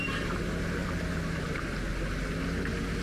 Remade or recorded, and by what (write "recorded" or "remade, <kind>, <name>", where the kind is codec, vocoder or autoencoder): recorded